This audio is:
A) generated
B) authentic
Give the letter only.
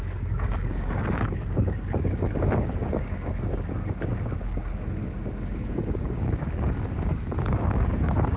A